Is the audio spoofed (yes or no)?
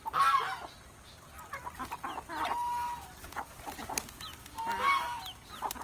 no